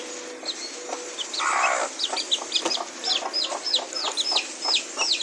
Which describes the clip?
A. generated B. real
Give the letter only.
B